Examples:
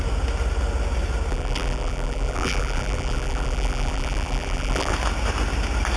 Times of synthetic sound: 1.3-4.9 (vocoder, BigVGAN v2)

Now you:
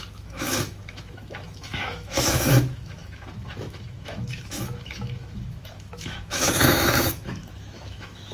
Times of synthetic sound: 0.0-8.3 (autoencoder, DAC-VAE)

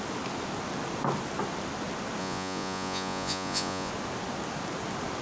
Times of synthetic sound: 2.2-3.9 (vocoder, Vocos)

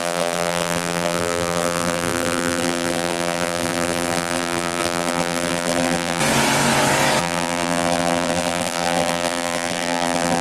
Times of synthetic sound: 0.0-6.2 (vocoder, BigVGAN v2); 7.2-10.4

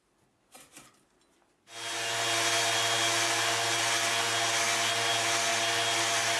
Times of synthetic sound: none

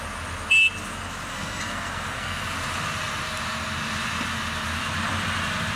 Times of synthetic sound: 1.3-2.4 (codec, SNAC)